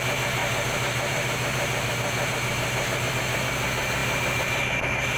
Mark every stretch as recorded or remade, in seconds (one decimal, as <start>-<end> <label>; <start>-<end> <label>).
0.0-0.4 recorded; 0.4-3.1 remade; 3.1-5.2 recorded